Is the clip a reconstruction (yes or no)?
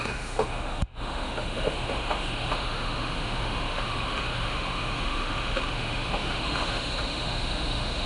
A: yes